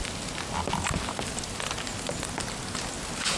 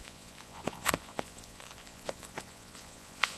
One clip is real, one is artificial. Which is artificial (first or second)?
second